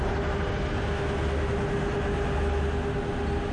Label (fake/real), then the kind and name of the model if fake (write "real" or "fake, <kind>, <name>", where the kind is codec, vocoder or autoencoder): real